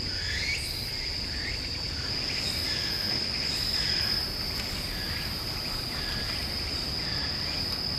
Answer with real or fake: real